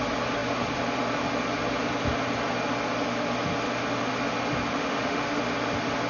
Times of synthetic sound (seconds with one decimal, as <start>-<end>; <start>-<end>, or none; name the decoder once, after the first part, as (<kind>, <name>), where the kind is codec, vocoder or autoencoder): 4.7-5.4 (autoencoder, DAC-VAE)